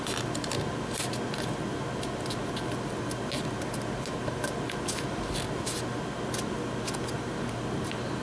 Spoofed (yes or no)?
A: no